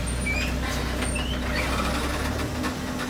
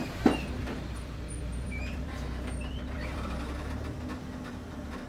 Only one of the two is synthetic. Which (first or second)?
second